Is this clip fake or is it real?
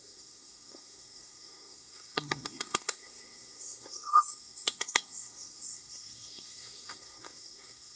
fake